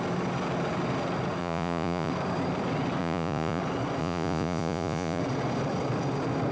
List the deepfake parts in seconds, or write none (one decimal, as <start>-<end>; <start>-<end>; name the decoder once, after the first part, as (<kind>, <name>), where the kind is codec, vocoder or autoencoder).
1.4-2.1 (vocoder, Vocos); 3.0-3.6; 4.0-5.2